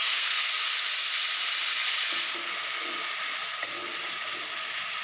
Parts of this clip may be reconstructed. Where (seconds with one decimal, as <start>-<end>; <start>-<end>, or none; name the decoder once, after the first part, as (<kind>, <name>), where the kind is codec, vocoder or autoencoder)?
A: 0.0-0.5 (codec, SNAC)